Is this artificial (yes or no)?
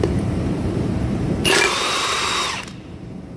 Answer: yes